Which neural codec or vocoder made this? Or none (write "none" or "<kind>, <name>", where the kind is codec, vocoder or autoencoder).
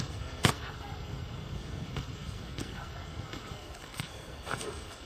codec, SNAC